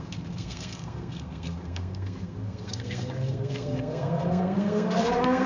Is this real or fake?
fake